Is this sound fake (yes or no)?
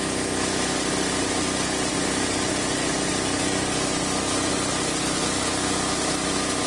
no